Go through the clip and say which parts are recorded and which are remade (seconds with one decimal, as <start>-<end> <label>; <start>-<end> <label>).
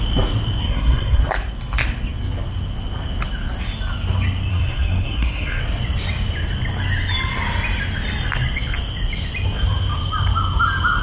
0.0-0.6 recorded; 0.6-1.2 remade; 1.2-4.5 recorded; 4.5-5.6 remade; 5.6-11.0 recorded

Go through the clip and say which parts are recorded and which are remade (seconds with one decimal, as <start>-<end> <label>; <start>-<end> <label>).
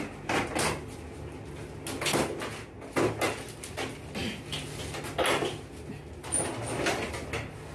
0.0-7.7 recorded